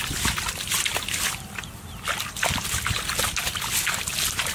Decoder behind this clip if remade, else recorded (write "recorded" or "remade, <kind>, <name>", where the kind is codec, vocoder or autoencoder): recorded